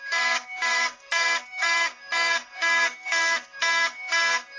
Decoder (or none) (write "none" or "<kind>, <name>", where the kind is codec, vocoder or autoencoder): codec, SNAC